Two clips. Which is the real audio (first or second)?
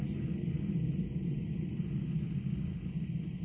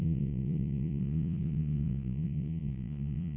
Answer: first